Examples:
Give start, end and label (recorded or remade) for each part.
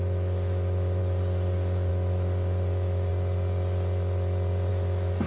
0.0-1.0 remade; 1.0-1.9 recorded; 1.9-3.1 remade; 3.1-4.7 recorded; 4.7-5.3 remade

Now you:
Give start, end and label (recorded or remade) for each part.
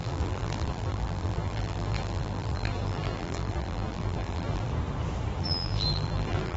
0.0-4.7 remade; 4.7-5.4 recorded; 5.4-6.6 remade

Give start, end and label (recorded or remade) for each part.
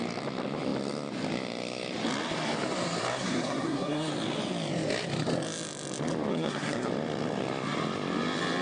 0.0-3.1 recorded; 3.1-4.1 remade; 4.1-6.3 recorded; 6.3-6.9 remade; 6.9-8.6 recorded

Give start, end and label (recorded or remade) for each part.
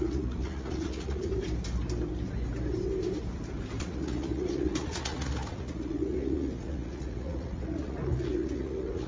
0.0-1.3 remade; 1.3-3.8 recorded; 3.8-9.1 remade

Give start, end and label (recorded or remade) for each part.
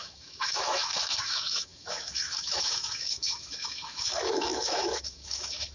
0.0-5.7 remade